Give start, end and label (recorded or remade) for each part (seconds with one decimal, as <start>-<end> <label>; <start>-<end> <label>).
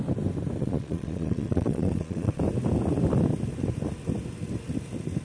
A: 0.0-0.6 recorded; 0.6-2.4 remade; 2.4-5.2 recorded